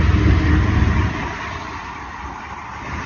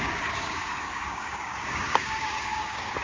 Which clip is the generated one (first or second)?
second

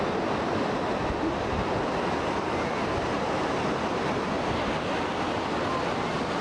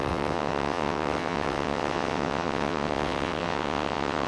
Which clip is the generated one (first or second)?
second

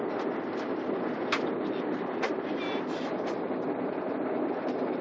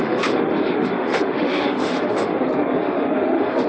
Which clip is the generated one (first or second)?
second